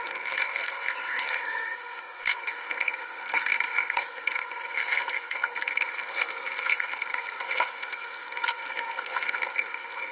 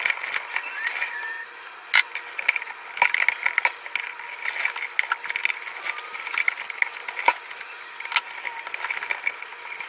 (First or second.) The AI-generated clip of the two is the first